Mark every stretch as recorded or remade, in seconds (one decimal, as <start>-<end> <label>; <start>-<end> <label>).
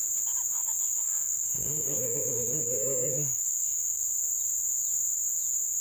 0.0-0.5 recorded; 0.5-4.0 remade; 4.0-5.8 recorded